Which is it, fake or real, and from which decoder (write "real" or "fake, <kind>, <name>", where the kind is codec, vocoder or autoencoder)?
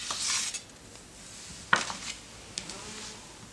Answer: real